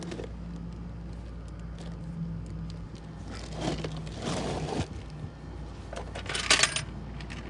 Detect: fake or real real